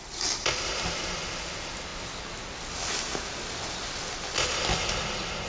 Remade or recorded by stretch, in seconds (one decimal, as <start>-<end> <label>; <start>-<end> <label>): 0.0-5.5 recorded